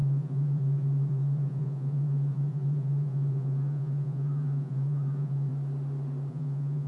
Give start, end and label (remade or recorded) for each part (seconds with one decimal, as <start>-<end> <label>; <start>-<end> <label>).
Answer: 0.0-5.5 remade; 5.5-6.3 recorded; 6.3-6.9 remade

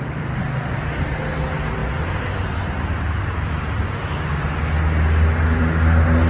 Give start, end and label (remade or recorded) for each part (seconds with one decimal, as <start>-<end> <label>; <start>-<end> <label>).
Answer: 0.0-6.3 recorded

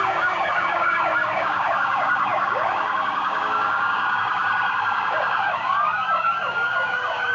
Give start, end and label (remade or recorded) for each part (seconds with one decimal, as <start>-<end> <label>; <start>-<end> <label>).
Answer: 0.0-7.3 remade

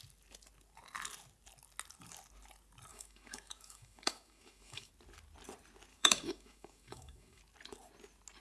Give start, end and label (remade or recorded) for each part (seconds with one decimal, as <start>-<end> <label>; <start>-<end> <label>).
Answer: 0.0-2.9 recorded; 2.9-4.9 remade; 4.9-5.9 recorded; 5.9-7.4 remade; 7.4-8.4 recorded

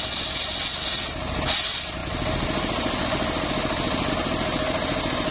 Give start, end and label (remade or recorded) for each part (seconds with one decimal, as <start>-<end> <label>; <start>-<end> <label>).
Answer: 0.0-5.3 recorded

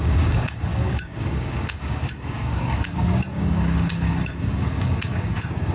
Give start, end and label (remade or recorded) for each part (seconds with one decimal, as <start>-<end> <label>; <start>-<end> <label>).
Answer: 0.0-5.7 remade

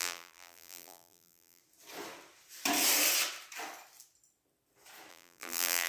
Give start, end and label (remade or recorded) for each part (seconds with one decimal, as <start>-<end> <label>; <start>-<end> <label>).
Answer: 0.0-1.6 remade; 1.6-5.1 recorded; 5.1-5.9 remade

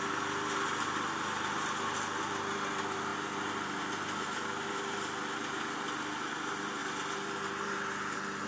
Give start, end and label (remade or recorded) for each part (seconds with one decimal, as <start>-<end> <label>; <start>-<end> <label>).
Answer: 0.0-8.5 recorded